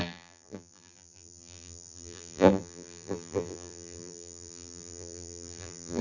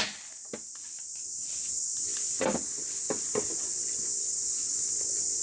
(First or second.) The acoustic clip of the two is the second